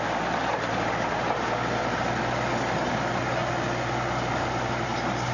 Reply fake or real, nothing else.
real